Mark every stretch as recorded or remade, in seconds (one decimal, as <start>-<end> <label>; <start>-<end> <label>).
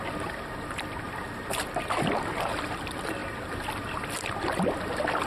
0.0-5.3 remade